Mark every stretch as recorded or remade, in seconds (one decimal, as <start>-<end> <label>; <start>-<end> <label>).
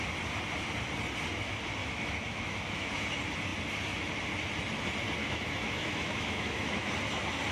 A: 0.0-1.8 recorded; 1.8-2.9 remade; 2.9-5.2 recorded; 5.2-6.9 remade; 6.9-7.5 recorded